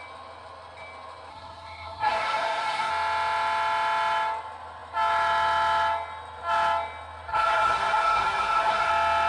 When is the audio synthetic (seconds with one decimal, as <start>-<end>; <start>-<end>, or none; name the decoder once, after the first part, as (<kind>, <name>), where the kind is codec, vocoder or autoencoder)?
1.3-2.9 (codec, SNAC); 7.3-8.9